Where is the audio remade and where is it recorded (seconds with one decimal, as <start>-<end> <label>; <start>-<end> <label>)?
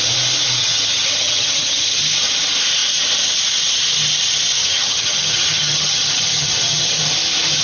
0.0-0.6 recorded; 0.6-2.0 remade; 2.0-4.6 recorded; 4.6-7.0 remade; 7.0-7.6 recorded